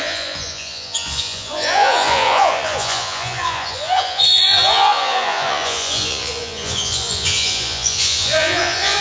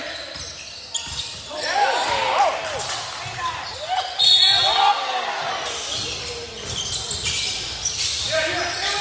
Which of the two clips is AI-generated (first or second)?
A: first